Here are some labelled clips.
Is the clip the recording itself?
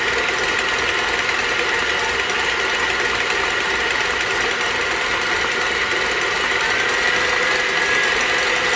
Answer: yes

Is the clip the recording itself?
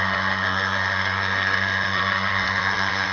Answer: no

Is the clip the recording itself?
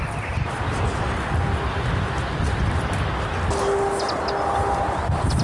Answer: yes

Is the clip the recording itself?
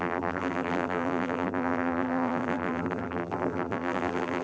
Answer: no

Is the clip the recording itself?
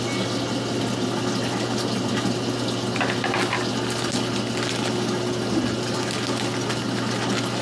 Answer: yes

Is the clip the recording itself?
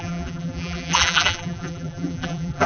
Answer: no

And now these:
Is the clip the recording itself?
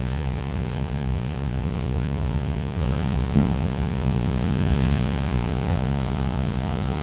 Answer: no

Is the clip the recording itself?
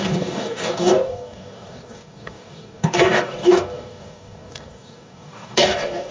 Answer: no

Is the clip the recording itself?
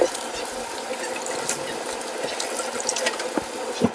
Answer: yes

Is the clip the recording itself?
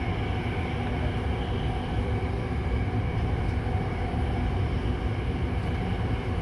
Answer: yes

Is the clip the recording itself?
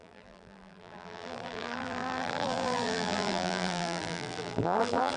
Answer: no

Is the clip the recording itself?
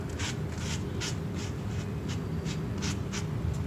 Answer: yes